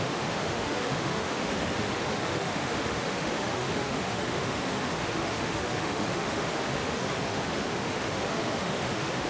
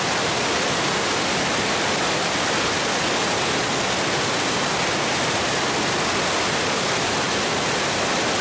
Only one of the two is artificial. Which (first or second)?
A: first